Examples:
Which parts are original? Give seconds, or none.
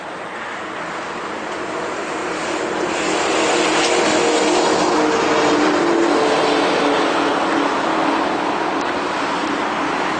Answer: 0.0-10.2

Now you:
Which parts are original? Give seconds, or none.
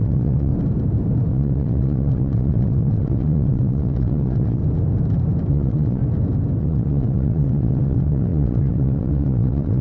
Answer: 0.5-1.3; 4.6-5.5; 6.0-6.6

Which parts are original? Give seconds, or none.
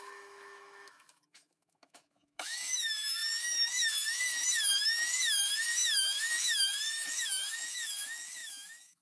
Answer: none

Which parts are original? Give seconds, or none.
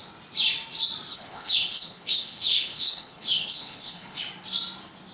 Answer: 0.0-1.1; 4.2-5.1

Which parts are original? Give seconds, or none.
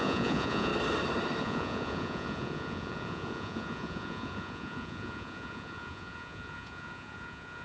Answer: 0.7-1.4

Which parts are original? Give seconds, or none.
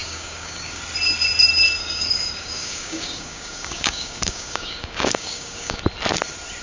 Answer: 0.8-1.8; 5.8-6.6